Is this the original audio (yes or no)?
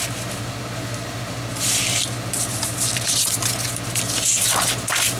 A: yes